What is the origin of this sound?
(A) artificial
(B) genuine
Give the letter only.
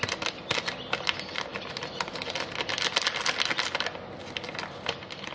B